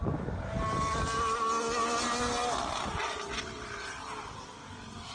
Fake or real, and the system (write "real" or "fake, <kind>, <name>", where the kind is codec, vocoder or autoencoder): real